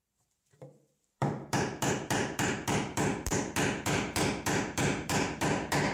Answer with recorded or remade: remade